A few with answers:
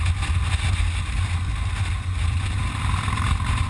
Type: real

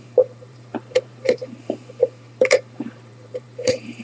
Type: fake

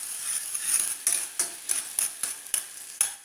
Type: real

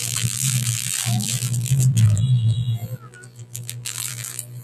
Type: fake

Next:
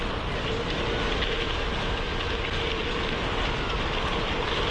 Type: real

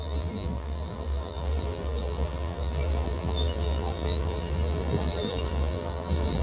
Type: fake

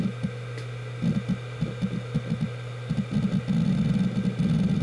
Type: real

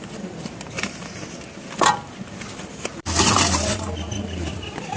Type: fake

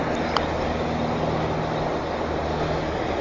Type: real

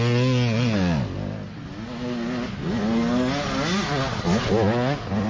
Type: real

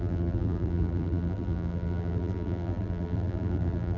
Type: fake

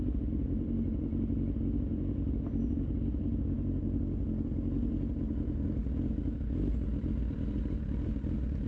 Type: fake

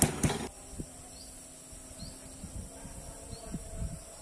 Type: real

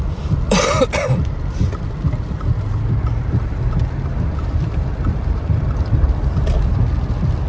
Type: fake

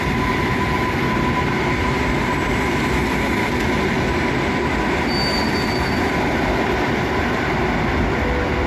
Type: real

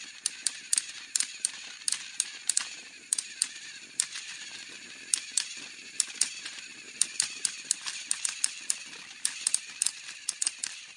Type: fake